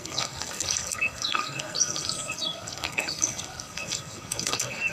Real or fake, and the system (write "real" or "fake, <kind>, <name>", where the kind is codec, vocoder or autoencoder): fake, codec, SNAC